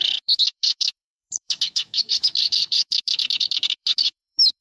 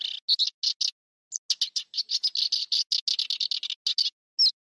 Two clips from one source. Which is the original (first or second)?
second